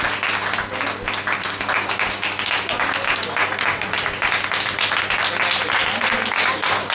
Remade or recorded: recorded